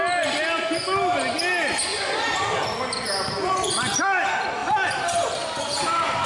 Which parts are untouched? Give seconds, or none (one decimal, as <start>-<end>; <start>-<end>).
0.0-4.6; 5.6-6.3